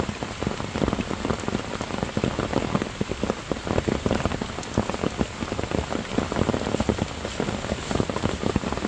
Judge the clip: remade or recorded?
recorded